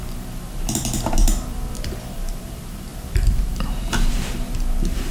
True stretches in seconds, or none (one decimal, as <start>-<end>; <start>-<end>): none